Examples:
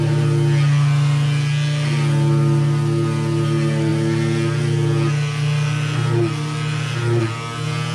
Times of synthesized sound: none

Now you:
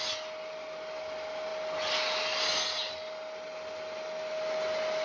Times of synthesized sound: none

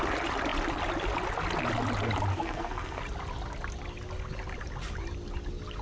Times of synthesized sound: 2.3-3.0 (codec, SNAC)

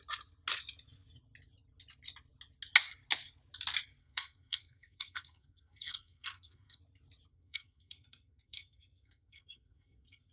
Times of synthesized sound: 4.0-6.8 (codec, SNAC); 7.3-10.3

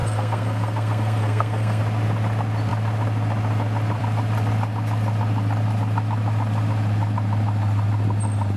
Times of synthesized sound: 0.0-1.8 (codec, SNAC)

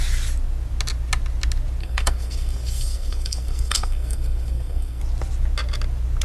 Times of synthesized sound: 1.8-5.0 (codec, SNAC)

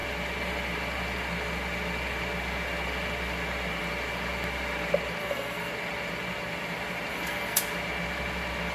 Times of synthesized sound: 5.2-5.7 (codec, SNAC); 7.1-7.6